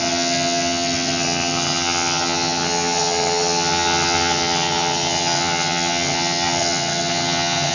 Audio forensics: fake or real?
fake